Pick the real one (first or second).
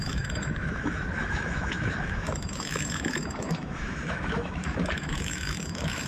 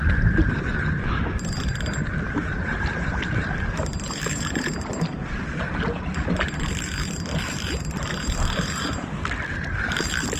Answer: second